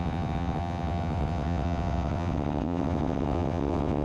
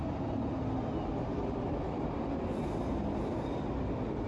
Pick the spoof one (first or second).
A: first